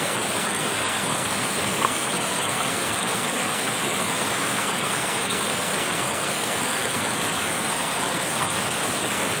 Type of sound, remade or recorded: remade